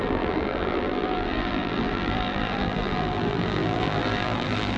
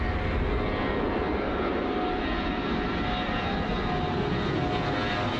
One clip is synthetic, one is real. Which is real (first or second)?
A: second